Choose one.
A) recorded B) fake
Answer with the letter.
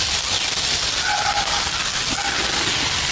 A